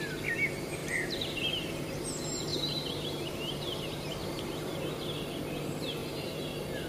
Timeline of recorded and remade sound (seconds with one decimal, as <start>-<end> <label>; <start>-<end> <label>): 0.0-0.8 recorded; 0.8-2.0 remade; 2.0-2.5 recorded; 2.5-4.8 remade; 4.8-6.0 recorded; 6.0-6.5 remade; 6.5-6.9 recorded